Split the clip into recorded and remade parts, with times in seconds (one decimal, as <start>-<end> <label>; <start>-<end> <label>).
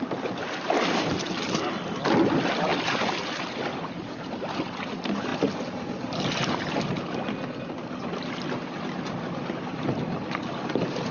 0.0-11.1 recorded